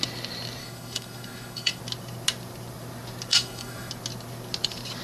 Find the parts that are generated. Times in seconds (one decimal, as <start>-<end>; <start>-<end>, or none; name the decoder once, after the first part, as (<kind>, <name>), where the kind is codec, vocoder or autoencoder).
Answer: 0.6-1.8 (autoencoder, DAC-VAE); 3.3-3.9